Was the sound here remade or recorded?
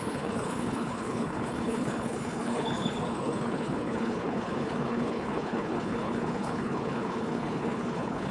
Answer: remade